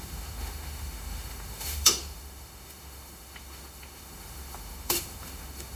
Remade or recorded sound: remade